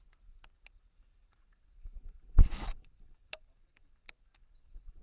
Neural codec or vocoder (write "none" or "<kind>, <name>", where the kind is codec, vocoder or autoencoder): none